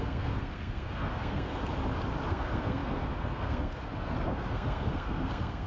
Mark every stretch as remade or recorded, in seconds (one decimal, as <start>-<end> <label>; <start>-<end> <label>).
0.0-1.6 remade; 1.6-2.3 recorded; 2.3-5.7 remade